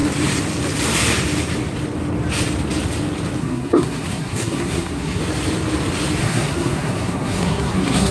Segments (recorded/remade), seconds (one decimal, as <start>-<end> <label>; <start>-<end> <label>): 0.0-3.4 recorded; 3.4-5.2 remade; 5.2-6.2 recorded; 6.2-8.1 remade